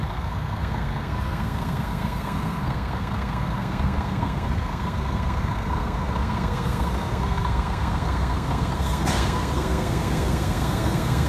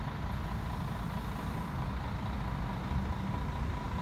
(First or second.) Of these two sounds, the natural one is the second